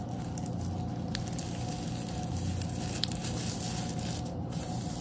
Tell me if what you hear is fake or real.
real